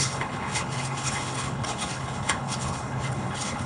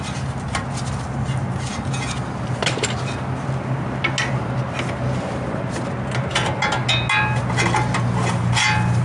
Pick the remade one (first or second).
first